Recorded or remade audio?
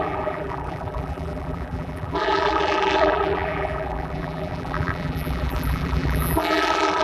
remade